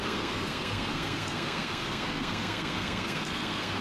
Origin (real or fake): fake